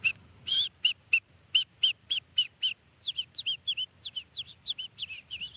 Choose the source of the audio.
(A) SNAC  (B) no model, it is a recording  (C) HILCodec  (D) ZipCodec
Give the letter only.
B